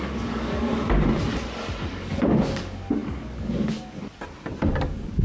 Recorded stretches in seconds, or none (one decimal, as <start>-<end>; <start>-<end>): 0.7-1.9; 4.0-4.8